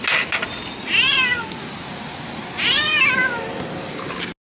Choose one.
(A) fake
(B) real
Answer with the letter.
B